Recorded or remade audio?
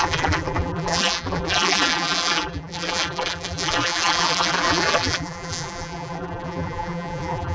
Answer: remade